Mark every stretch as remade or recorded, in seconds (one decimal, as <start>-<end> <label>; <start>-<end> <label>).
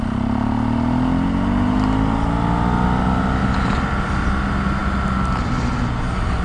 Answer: 0.0-6.4 recorded